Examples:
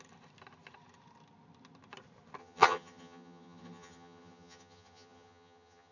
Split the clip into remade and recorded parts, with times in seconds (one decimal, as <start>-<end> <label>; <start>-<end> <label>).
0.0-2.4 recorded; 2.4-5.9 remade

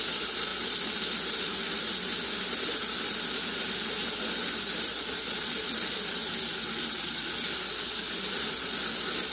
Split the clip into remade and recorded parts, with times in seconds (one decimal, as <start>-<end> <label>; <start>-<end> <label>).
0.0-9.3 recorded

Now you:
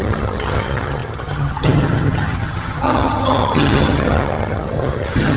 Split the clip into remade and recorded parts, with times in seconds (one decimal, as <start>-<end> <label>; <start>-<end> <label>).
0.0-5.4 remade

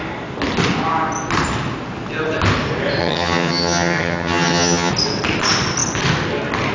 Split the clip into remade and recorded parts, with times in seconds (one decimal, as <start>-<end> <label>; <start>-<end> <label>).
0.0-3.0 recorded; 3.0-4.9 remade; 4.9-6.7 recorded

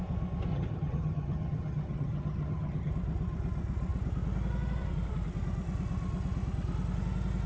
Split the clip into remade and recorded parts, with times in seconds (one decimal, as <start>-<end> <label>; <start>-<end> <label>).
0.0-0.5 recorded; 0.5-2.9 remade; 2.9-7.5 recorded

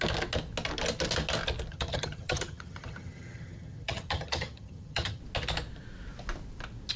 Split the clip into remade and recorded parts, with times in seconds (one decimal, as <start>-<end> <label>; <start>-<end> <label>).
0.0-1.7 recorded; 1.7-5.2 remade; 5.2-7.0 recorded